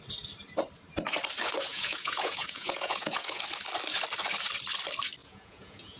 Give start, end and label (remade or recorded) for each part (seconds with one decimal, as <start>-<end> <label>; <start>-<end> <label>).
0.0-1.7 recorded; 1.7-3.4 remade; 3.4-5.2 recorded; 5.2-6.0 remade